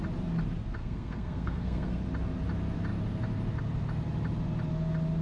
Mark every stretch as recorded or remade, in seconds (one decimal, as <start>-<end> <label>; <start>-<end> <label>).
0.0-0.8 recorded; 0.8-2.0 remade; 2.0-5.2 recorded